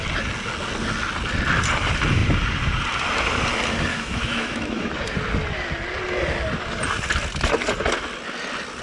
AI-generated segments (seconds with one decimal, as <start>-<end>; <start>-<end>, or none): 3.9-5.0